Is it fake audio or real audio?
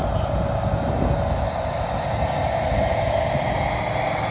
real